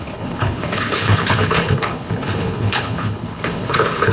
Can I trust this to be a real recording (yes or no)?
no